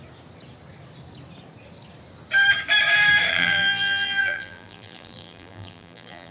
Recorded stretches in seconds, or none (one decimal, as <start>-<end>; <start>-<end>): 0.0-3.3

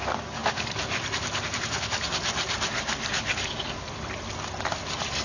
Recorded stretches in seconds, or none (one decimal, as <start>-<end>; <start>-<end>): 0.0-0.4; 3.5-5.2